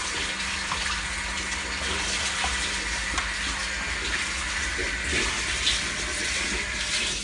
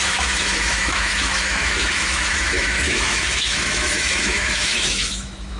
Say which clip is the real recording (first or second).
first